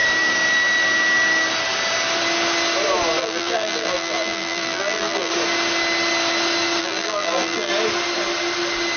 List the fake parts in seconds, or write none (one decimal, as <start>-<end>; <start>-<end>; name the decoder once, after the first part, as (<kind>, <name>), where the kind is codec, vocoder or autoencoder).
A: 3.2-5.3 (vocoder, BigVGAN v2); 6.8-7.7